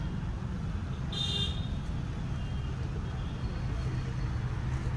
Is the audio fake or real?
real